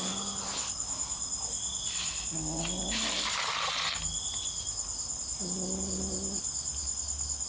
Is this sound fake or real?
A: real